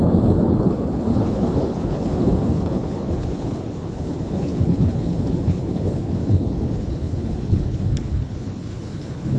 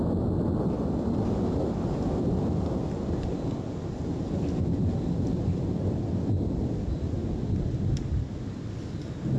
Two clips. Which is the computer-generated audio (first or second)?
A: first